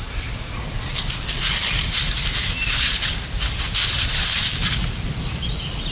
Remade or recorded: recorded